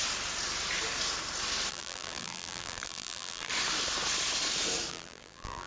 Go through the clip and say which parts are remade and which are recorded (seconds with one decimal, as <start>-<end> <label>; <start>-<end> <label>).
0.0-1.7 recorded; 1.7-3.5 remade; 3.5-4.9 recorded; 4.9-5.7 remade